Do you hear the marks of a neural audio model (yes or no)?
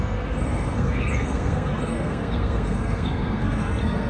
yes